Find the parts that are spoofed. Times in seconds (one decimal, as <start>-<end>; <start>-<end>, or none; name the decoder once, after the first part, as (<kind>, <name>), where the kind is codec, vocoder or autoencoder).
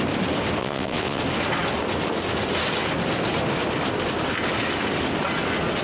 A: 0.6-1.2 (vocoder, WaveNeXt)